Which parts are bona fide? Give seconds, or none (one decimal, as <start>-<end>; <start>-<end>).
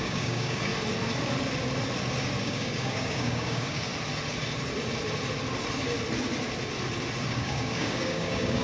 0.7-2.4; 3.9-7.3